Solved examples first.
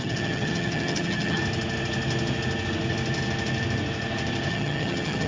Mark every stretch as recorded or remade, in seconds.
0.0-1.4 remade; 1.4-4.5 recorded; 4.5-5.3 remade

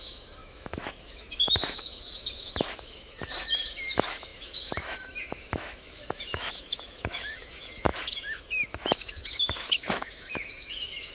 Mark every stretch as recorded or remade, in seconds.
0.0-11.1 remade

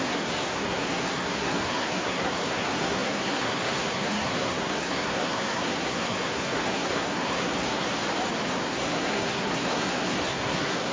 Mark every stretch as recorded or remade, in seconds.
0.0-7.9 remade; 7.9-8.5 recorded; 8.5-10.9 remade

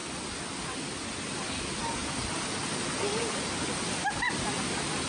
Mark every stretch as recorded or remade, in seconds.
0.0-5.1 recorded